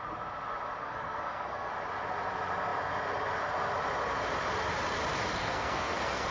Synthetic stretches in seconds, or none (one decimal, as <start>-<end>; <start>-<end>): 0.8-1.7; 5.4-6.3